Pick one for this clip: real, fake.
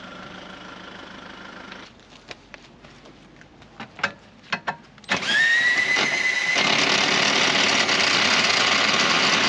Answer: real